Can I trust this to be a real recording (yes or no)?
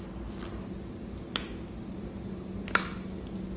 yes